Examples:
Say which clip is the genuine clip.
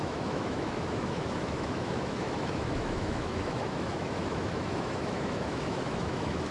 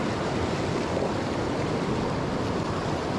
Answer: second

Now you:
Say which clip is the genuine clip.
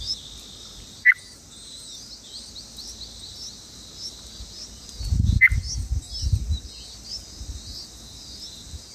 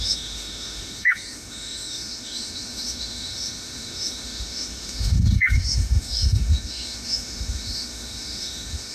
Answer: first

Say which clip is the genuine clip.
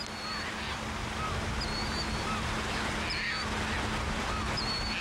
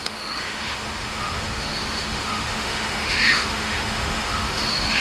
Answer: first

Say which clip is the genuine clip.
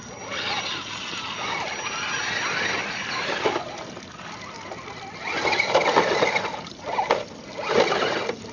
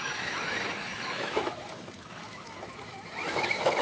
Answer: first